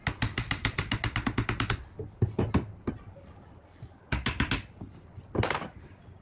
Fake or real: real